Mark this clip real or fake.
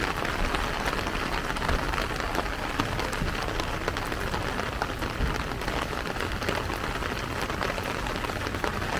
real